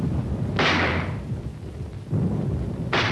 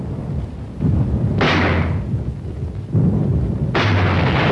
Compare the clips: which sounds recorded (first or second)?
second